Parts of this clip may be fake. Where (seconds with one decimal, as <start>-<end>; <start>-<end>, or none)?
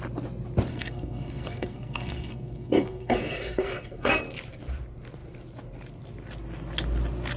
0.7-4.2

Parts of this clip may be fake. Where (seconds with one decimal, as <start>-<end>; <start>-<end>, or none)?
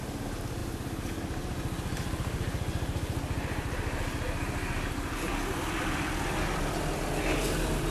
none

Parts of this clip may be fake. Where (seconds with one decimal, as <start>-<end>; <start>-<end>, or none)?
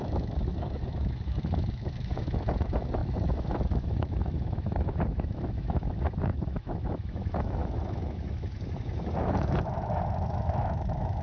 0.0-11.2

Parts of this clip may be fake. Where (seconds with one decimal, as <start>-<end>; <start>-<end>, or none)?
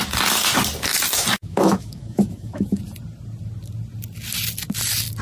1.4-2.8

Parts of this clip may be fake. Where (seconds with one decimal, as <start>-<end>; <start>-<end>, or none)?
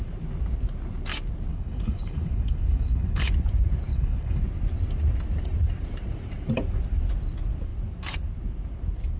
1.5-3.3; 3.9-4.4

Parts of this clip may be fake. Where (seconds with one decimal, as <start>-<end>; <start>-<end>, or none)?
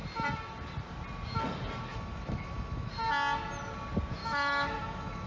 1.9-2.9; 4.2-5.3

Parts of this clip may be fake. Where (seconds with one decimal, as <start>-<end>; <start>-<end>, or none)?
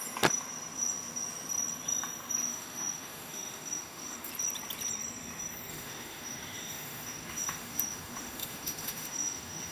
2.4-4.3; 5.7-9.7